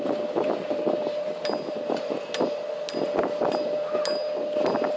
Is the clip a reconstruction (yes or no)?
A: no